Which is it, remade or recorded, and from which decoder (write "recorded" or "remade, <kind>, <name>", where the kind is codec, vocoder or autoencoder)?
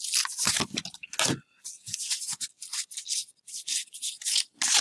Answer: recorded